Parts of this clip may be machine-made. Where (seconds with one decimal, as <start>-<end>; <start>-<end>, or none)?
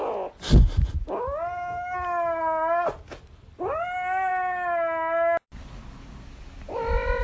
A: none